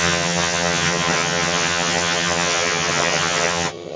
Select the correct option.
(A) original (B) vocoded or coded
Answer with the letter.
B